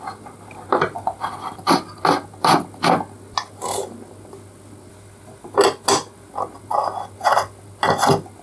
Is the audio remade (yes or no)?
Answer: no